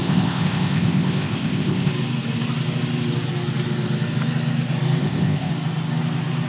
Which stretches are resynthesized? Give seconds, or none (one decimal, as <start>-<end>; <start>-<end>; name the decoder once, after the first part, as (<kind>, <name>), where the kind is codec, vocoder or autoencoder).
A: 0.0-1.9 (codec, ZipCodec); 5.0-5.5